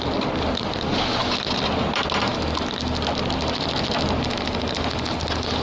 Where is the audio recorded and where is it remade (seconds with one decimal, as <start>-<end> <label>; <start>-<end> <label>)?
0.0-5.6 recorded